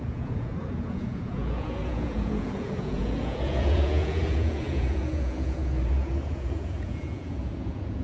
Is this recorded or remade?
remade